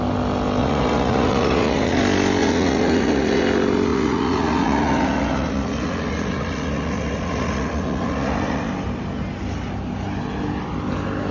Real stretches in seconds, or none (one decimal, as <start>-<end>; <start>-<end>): 0.0-0.6; 2.0-2.4; 3.4-3.9; 8.7-11.3